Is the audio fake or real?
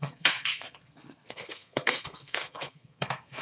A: fake